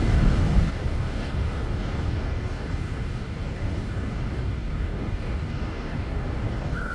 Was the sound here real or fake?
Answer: fake